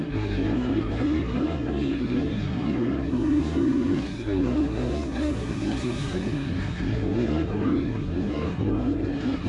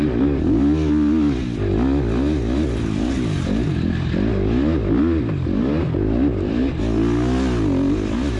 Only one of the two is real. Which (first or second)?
second